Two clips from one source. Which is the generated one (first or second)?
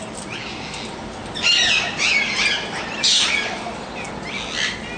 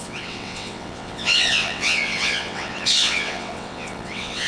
second